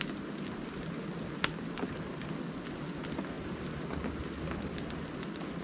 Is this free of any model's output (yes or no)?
yes